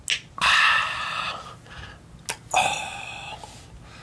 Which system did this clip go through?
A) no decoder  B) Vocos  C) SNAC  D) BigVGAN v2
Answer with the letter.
A